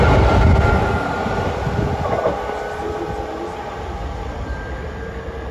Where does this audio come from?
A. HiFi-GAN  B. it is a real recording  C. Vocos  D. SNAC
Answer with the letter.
B